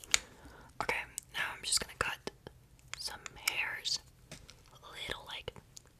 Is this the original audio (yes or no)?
yes